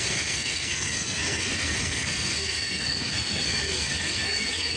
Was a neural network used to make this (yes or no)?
yes